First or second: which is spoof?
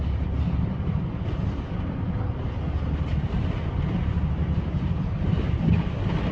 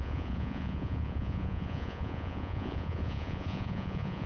second